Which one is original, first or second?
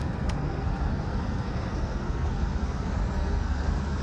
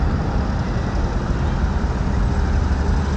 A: second